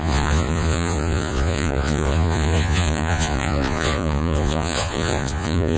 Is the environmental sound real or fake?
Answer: fake